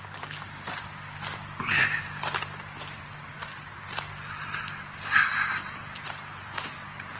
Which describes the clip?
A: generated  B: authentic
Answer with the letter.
B